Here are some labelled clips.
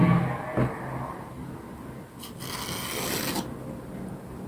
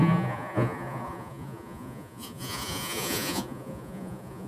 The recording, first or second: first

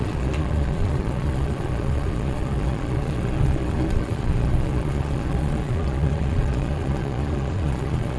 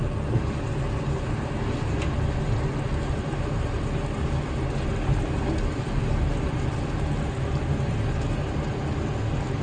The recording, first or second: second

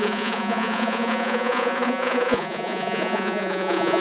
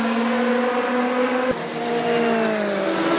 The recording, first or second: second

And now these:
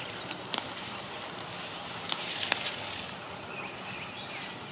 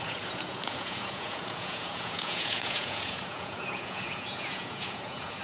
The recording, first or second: first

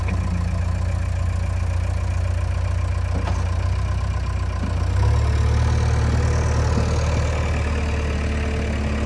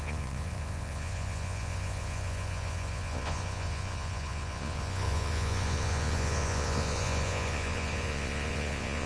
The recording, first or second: first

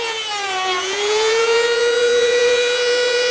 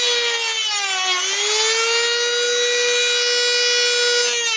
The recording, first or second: second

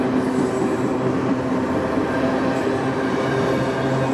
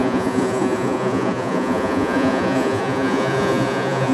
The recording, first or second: first